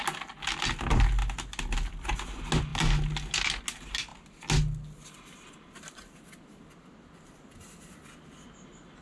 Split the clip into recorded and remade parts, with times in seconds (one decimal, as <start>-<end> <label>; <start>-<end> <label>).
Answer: 0.0-9.0 recorded